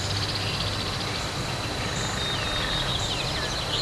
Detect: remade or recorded recorded